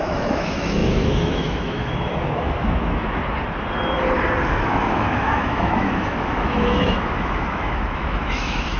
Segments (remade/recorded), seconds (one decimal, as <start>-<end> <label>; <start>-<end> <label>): 0.0-3.2 remade; 3.2-4.5 recorded; 4.5-8.8 remade